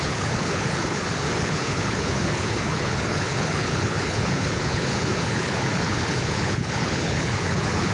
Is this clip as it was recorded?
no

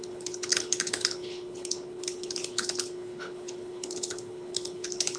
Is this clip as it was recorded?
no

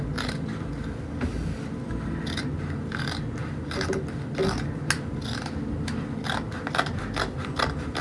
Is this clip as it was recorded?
yes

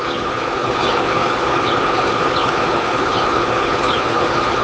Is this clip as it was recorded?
no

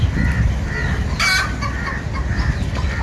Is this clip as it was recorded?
yes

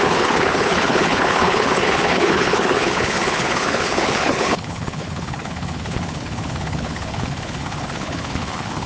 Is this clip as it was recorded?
no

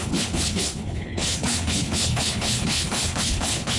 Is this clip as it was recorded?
no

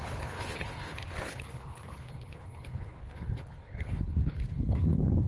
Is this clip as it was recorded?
no